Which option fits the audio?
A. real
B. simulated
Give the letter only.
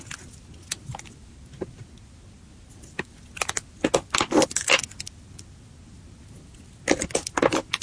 A